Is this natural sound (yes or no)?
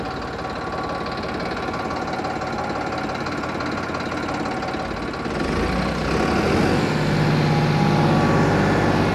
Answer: yes